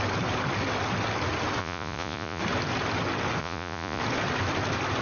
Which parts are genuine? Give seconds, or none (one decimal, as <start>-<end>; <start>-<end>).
0.0-1.6; 2.4-3.4; 4.0-5.0